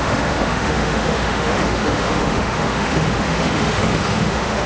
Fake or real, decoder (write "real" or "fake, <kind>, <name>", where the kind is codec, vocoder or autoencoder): fake, autoencoder, DAC-VAE